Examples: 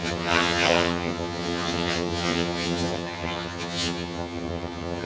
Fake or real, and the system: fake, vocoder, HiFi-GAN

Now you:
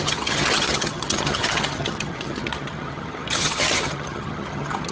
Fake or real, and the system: fake, vocoder, HiFi-GAN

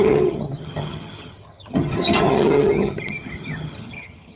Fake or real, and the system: fake, vocoder, HiFi-GAN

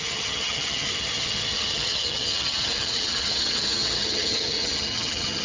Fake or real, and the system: fake, vocoder, HiFi-GAN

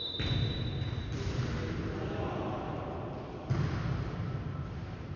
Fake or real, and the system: real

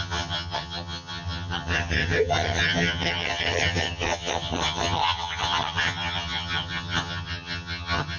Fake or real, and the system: fake, vocoder, HiFi-GAN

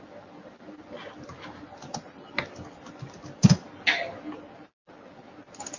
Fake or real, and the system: real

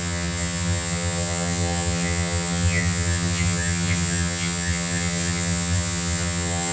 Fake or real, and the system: fake, vocoder, HiFi-GAN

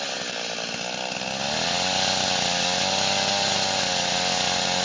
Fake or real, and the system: real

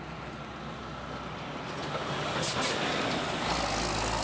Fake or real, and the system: real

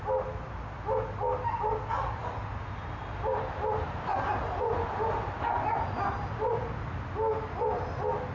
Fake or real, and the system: real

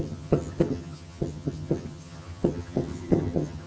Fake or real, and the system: fake, vocoder, HiFi-GAN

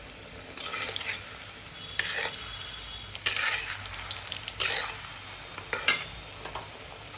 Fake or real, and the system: real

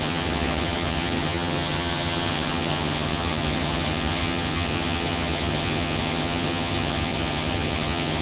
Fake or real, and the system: fake, vocoder, HiFi-GAN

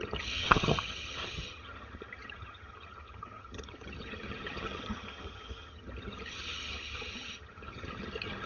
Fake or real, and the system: fake, vocoder, HiFi-GAN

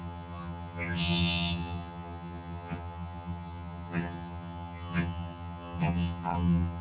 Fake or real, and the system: fake, vocoder, HiFi-GAN